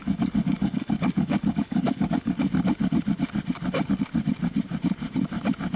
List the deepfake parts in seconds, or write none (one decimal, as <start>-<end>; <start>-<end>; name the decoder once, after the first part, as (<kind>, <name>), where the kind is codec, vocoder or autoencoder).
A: 0.0-2.3 (codec, DAC)